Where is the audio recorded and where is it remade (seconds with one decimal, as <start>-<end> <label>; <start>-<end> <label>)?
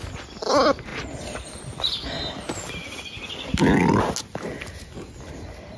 0.0-5.8 recorded